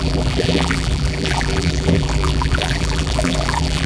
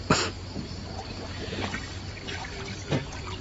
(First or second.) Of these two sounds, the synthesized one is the first